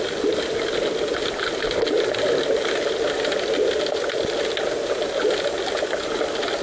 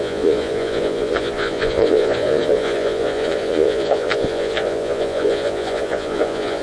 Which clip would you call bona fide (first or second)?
first